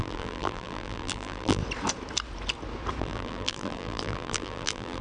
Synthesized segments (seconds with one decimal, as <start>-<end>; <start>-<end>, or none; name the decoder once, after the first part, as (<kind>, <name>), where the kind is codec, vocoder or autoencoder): 0.0-1.6 (vocoder, BigVGAN v2); 3.0-5.0